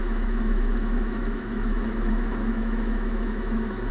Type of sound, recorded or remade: remade